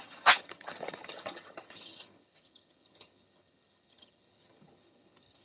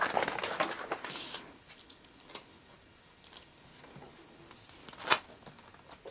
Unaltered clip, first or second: second